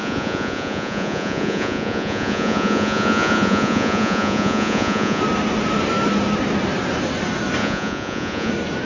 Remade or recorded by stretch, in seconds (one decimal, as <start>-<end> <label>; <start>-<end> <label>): 0.0-5.2 remade; 5.2-7.6 recorded; 7.6-8.5 remade; 8.5-8.9 recorded